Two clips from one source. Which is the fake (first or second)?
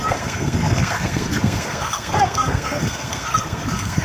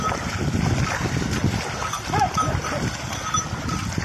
first